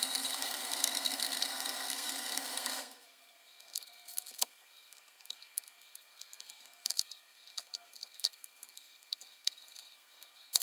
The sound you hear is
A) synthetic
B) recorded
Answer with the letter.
A